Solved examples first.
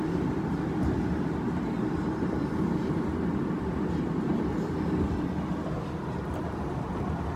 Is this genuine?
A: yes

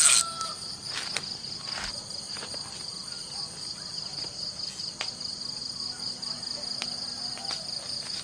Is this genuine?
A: yes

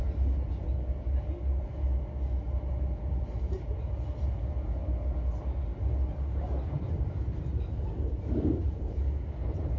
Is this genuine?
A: yes